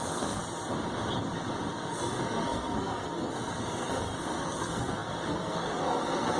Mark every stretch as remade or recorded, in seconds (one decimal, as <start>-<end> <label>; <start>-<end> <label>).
0.0-0.4 remade; 0.4-1.7 recorded; 1.7-6.4 remade